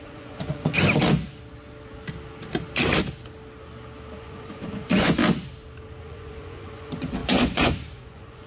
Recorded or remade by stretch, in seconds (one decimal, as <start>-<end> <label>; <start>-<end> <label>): 0.0-0.7 remade; 0.7-4.2 recorded; 4.2-5.2 remade; 5.2-6.0 recorded; 6.0-8.5 remade